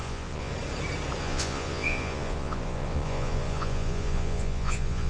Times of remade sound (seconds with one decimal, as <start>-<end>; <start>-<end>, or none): 0.0-0.5; 1.2-5.1